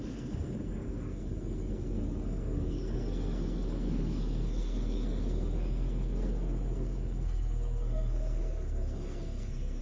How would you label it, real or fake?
fake